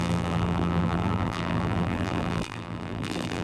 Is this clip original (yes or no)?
no